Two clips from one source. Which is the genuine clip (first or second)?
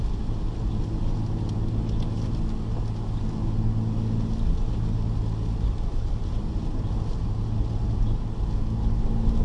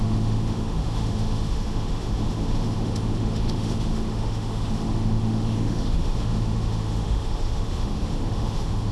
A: first